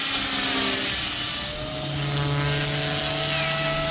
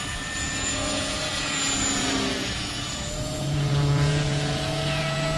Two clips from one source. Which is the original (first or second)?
first